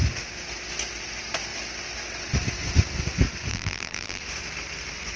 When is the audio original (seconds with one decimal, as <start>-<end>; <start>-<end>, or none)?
0.0-3.5; 4.2-5.2